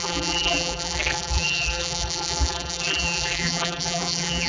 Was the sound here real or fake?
fake